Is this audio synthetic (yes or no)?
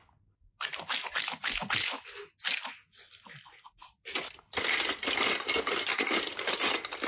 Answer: no